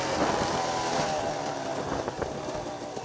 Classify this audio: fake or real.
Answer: real